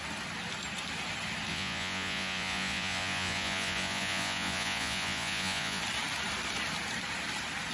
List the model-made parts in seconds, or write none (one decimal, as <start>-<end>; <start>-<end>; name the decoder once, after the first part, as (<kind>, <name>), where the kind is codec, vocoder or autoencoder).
1.5-5.8 (vocoder, Vocos)